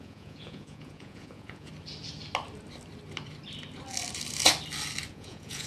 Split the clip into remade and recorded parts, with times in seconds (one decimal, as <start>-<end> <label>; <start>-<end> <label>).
0.0-1.7 remade; 1.7-5.1 recorded; 5.1-5.7 remade